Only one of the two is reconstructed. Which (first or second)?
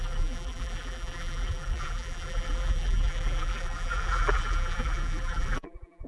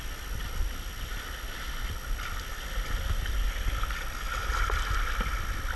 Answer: first